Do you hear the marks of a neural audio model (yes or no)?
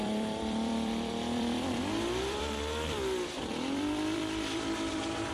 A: yes